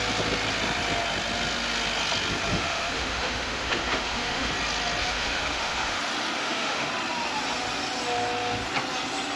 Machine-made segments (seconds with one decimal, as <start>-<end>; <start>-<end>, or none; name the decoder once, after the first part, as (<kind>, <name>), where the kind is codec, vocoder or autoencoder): 2.5-4.5 (autoencoder, DAC-VAE); 5.0-6.0; 6.4-6.9